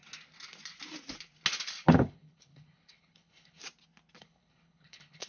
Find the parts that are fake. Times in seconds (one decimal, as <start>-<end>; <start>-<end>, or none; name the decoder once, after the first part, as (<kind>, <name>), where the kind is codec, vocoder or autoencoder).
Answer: 1.9-3.6 (codec, HILCodec); 4.2-5.3